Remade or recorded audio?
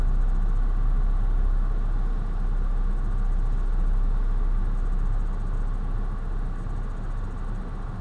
recorded